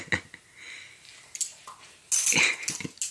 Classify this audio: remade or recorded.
recorded